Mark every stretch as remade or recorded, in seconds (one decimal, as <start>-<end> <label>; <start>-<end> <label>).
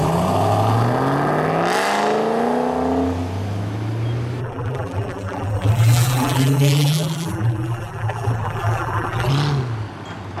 0.0-4.4 recorded; 4.4-9.3 remade; 9.3-10.4 recorded